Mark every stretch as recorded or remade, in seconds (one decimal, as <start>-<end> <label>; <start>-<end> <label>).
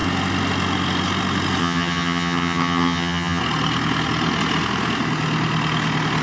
0.0-1.6 recorded; 1.6-3.4 remade; 3.4-6.2 recorded